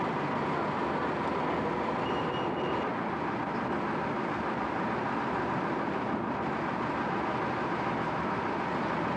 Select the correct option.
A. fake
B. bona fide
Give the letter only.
B